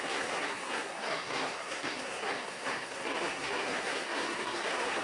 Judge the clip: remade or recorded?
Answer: remade